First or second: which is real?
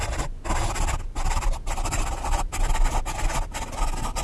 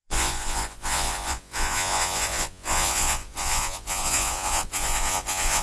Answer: first